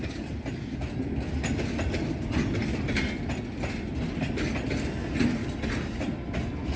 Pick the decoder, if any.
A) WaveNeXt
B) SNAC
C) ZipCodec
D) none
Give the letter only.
D